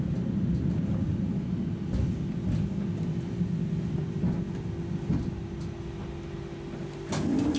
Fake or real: real